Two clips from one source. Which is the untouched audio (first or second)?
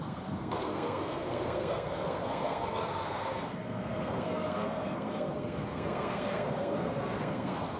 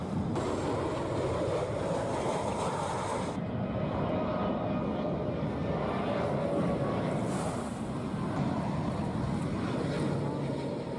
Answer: second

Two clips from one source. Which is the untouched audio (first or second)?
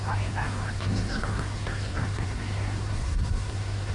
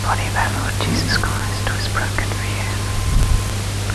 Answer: second